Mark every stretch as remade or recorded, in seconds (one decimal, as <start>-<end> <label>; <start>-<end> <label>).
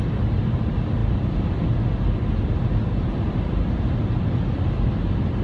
0.0-5.4 recorded